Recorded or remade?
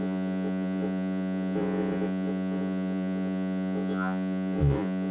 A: remade